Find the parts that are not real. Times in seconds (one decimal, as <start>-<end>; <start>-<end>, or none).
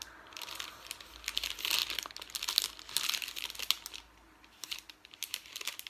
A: none